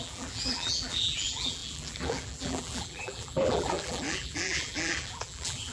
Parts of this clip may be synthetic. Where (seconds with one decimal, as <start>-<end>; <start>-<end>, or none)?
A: 0.0-5.7